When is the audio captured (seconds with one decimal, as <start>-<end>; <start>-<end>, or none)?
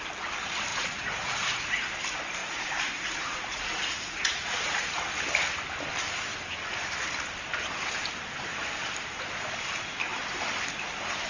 0.0-0.7; 1.7-2.4; 4.9-11.3